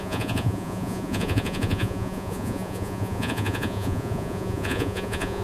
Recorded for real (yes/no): no